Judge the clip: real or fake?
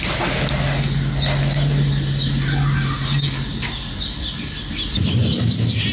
real